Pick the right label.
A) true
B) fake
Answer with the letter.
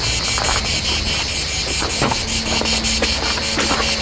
A